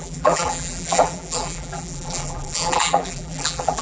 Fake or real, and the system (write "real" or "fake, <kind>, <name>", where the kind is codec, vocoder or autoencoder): fake, vocoder, BigVGAN v2